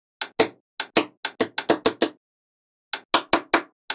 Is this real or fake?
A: real